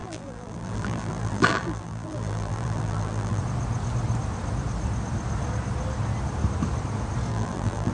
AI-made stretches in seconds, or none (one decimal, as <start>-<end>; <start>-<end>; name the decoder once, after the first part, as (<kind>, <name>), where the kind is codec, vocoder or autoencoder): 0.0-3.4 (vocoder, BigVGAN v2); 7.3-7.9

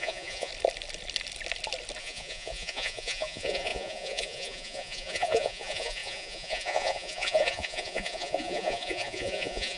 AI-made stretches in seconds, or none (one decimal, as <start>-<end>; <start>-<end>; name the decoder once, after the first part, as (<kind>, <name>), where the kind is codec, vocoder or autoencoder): 0.0-0.5 (vocoder, Vocos); 2.0-9.8

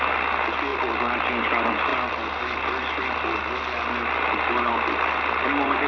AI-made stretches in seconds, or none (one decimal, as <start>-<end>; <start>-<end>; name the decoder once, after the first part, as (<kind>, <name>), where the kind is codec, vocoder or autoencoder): none

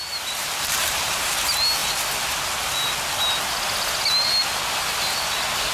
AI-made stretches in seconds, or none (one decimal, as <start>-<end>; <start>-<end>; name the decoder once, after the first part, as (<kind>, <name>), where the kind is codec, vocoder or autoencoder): 0.4-1.3 (vocoder, BigVGAN v2)